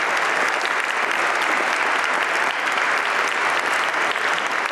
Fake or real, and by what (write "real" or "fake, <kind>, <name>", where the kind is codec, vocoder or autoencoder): real